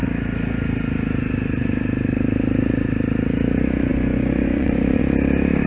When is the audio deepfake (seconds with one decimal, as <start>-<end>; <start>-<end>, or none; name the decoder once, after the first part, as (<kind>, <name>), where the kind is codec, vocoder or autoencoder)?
3.9-5.0 (vocoder, Vocos)